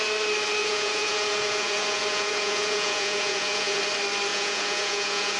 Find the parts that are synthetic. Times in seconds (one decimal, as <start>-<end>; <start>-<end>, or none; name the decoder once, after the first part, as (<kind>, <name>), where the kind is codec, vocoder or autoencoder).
0.6-3.8 (vocoder, Vocos); 4.3-5.4